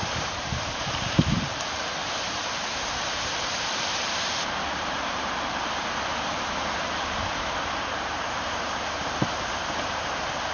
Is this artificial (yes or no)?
yes